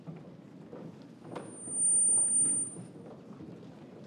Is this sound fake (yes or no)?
no